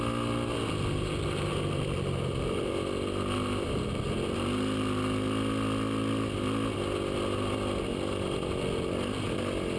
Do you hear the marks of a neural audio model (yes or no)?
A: no